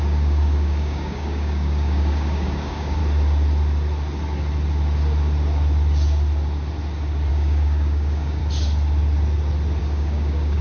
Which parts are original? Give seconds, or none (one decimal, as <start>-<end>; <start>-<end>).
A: 3.0-7.3; 8.4-9.8

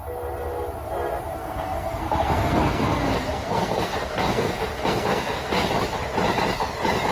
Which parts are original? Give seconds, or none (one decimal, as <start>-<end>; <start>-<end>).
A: 0.0-1.4; 5.7-7.1

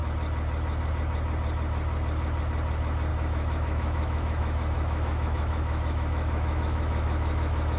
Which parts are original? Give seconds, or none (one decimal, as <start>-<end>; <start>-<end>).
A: 0.0-3.1

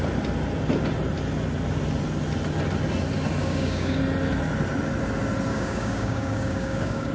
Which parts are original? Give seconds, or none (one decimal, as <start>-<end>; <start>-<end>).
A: 0.0-3.4; 4.0-5.5